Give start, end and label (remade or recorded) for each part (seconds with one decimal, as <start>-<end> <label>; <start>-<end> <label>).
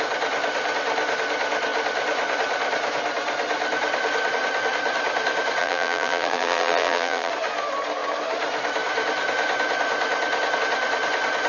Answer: 0.0-5.6 recorded; 5.6-7.3 remade; 7.3-11.5 recorded